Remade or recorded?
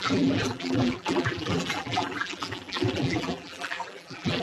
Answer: remade